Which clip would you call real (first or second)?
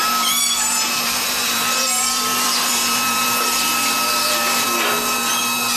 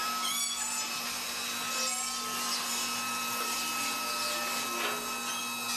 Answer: second